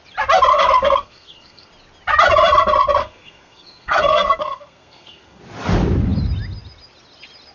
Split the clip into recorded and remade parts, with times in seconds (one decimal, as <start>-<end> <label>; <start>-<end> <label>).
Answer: 0.0-0.5 recorded; 0.5-1.7 remade; 1.7-3.0 recorded; 3.0-5.4 remade; 5.4-7.5 recorded